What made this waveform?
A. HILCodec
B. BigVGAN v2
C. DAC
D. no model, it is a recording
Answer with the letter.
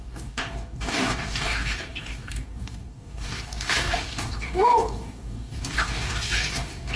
C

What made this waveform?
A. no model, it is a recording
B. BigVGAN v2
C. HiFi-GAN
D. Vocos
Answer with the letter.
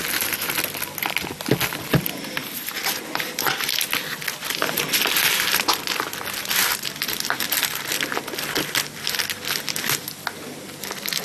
A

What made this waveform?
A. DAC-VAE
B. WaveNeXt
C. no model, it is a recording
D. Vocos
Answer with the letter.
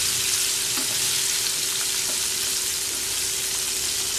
C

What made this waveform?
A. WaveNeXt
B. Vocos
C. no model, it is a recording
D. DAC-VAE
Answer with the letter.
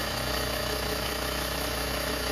D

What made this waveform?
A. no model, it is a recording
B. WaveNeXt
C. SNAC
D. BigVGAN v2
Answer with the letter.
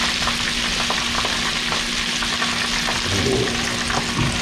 A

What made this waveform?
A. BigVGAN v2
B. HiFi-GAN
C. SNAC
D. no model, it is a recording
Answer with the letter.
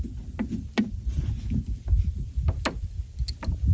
D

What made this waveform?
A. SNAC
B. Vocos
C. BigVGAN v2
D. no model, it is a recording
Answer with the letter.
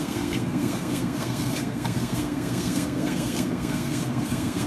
A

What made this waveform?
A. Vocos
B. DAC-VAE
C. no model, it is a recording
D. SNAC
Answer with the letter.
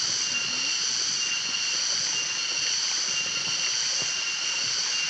C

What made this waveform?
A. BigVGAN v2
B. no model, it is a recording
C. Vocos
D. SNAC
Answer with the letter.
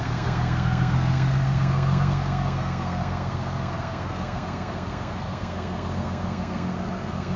D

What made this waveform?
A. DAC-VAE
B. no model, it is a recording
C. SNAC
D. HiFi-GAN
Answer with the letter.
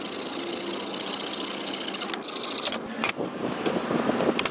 B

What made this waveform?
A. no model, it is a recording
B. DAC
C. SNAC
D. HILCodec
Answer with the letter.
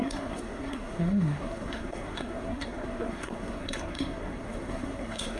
C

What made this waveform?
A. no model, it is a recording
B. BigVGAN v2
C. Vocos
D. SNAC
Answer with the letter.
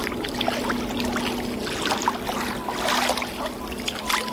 A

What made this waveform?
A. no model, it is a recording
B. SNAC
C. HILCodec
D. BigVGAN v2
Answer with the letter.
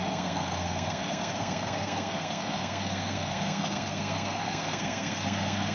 B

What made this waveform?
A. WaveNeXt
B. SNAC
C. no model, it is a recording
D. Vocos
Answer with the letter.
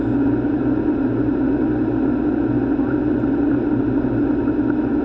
C